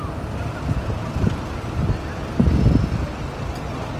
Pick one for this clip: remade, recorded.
recorded